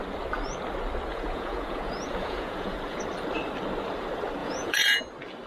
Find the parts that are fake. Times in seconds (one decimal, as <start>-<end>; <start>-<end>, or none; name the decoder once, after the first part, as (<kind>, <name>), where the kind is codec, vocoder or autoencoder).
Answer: 1.1-3.0 (vocoder, Vocos); 4.4-5.0